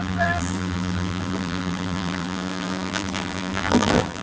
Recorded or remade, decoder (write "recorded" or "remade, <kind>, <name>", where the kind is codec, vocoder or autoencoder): remade, vocoder, BigVGAN v2